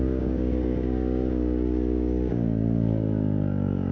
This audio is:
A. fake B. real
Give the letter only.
A